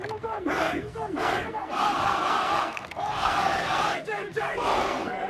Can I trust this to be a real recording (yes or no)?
no